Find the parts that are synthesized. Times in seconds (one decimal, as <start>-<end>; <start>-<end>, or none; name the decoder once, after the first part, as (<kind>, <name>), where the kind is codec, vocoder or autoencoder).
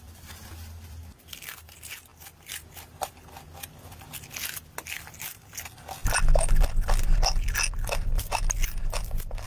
none